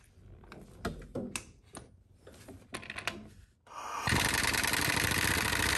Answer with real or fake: real